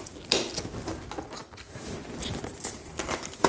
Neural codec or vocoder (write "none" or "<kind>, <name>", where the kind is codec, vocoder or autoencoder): none